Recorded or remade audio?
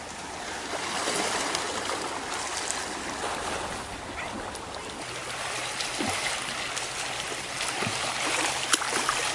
recorded